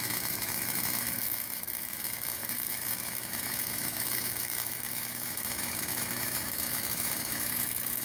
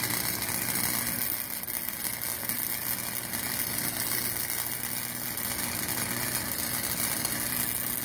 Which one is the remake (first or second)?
first